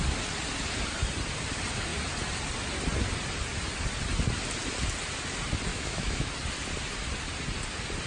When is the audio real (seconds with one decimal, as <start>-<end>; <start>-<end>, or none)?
0.0-5.7; 6.3-8.1